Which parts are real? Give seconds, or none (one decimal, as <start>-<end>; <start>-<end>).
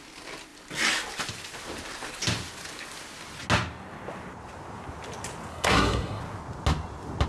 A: 0.0-5.5; 6.2-7.3